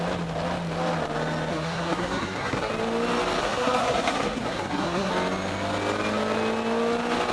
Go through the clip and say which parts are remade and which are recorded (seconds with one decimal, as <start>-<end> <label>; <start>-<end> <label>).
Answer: 0.0-1.5 recorded; 1.5-2.7 remade; 2.7-3.4 recorded; 3.4-5.1 remade; 5.1-7.3 recorded

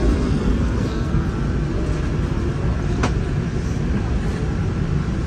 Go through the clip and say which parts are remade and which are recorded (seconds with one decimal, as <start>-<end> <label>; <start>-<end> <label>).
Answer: 0.0-1.3 remade; 1.3-5.3 recorded

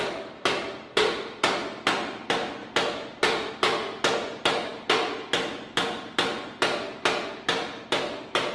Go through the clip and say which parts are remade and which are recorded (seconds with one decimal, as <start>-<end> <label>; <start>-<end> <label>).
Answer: 0.0-8.5 recorded